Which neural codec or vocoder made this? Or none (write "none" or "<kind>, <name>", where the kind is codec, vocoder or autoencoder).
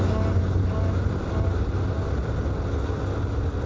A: none